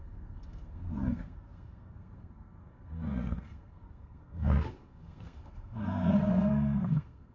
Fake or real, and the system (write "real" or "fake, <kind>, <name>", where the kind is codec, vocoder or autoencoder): fake, codec, SNAC